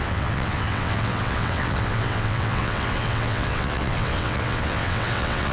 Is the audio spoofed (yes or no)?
yes